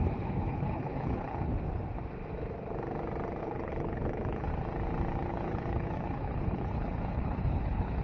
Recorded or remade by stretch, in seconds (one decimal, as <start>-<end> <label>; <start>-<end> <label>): 0.0-1.5 remade; 1.5-3.4 recorded; 3.4-4.5 remade; 4.5-5.3 recorded; 5.3-8.0 remade